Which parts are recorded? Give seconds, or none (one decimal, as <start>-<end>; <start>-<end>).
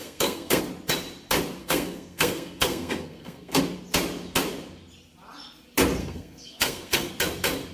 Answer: 0.6-1.6; 3.6-6.0; 7.1-7.7